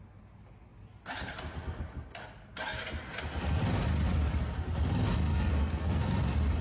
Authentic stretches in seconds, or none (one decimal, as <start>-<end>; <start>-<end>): 0.0-5.3; 6.0-6.6